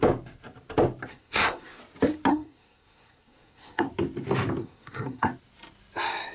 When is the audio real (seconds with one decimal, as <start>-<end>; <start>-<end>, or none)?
0.0-1.1; 1.8-2.3; 3.9-4.6; 5.3-6.3